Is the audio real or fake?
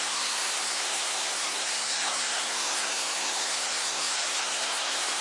fake